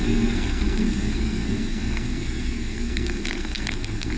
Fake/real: fake